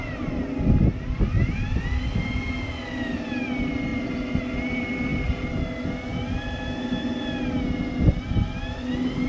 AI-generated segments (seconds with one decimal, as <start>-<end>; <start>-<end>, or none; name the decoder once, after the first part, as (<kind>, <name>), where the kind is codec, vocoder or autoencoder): none